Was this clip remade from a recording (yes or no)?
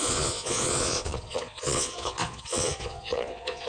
yes